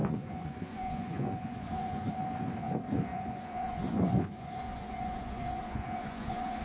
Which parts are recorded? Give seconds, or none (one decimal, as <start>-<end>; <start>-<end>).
2.1-3.1